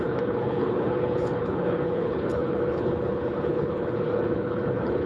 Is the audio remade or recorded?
remade